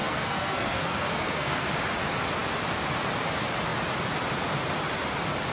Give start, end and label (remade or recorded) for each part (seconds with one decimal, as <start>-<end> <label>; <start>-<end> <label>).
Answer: 0.0-1.7 remade; 1.7-5.5 recorded